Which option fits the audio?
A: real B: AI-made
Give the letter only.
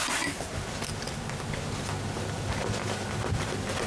A